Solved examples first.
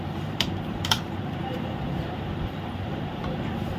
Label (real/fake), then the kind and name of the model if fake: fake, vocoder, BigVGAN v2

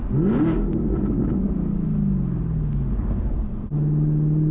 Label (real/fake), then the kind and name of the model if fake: real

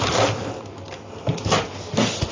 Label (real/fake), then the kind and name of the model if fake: real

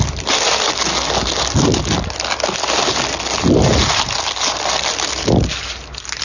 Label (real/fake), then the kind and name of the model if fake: real